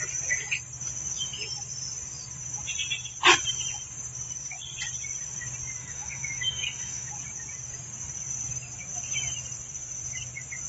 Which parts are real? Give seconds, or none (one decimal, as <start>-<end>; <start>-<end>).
0.0-5.8; 7.1-10.7